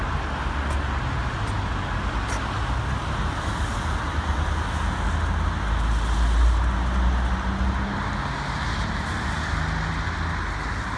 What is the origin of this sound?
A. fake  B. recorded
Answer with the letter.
B